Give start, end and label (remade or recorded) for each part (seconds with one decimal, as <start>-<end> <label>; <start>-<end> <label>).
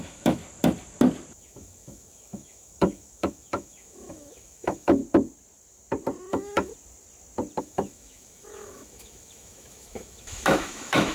0.0-0.4 remade; 0.4-1.4 recorded; 1.4-5.0 remade; 5.0-6.3 recorded; 6.3-6.7 remade; 6.7-7.6 recorded; 7.6-11.1 remade